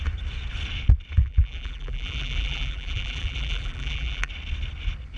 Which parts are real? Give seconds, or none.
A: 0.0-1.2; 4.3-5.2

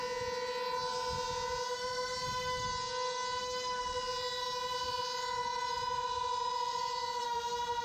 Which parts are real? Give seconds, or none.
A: 0.0-5.4

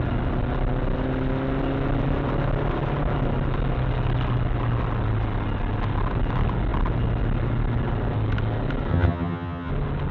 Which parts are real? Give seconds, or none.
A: 0.0-8.9; 9.7-10.1